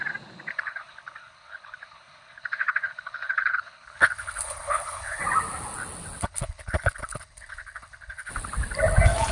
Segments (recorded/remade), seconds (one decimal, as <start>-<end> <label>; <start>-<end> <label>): 0.0-0.5 recorded; 0.5-5.2 remade; 5.2-6.2 recorded; 6.2-8.3 remade; 8.3-9.3 recorded